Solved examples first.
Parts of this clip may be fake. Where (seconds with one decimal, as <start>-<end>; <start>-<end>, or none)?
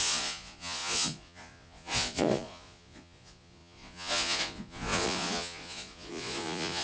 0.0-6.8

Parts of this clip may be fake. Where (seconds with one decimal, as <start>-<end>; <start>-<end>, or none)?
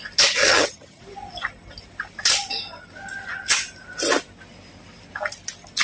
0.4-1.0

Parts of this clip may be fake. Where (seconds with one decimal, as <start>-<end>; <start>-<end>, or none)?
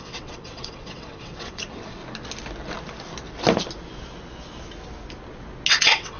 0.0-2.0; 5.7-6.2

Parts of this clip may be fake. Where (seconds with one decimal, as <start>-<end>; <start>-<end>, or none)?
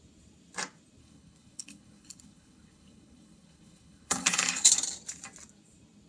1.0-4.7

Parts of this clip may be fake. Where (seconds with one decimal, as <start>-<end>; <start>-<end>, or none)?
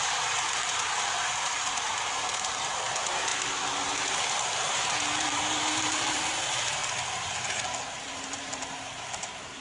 0.0-3.3; 4.4-6.8; 8.0-9.6